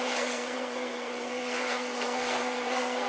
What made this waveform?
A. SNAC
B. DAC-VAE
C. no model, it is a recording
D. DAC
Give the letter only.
A